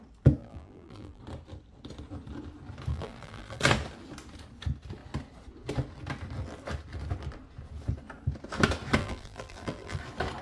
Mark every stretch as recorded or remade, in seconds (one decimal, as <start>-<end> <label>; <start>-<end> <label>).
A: 0.0-0.4 recorded; 0.4-1.2 remade; 1.2-2.9 recorded; 2.9-3.6 remade; 3.6-9.0 recorded; 9.0-10.0 remade; 10.0-10.4 recorded